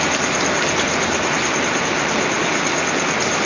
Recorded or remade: recorded